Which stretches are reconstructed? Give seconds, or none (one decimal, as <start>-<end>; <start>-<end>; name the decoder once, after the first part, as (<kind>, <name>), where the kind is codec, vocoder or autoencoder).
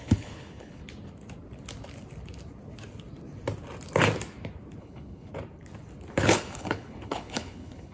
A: 0.0-0.8 (codec, HILCodec); 4.8-5.3; 6.1-7.9